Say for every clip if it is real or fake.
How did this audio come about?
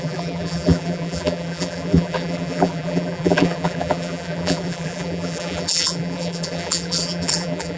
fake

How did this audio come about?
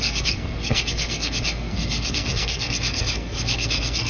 fake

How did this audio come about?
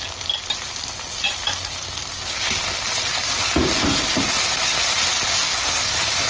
real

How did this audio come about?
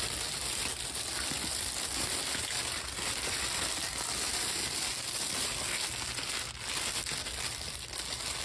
real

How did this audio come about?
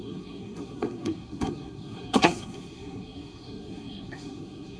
fake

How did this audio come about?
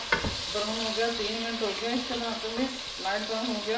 real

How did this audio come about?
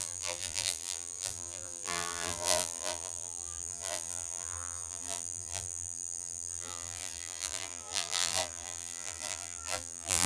fake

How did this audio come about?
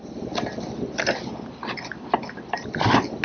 real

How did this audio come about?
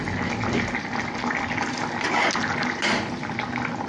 real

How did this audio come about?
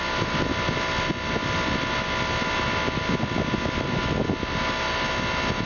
real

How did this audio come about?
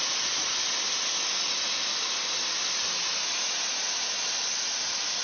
real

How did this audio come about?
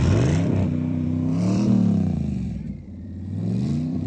fake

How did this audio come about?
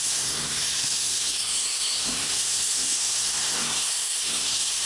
fake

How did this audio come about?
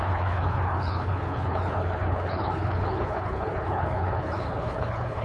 fake